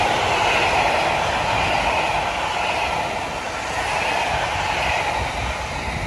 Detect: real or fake real